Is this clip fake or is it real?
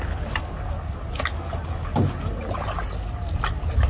real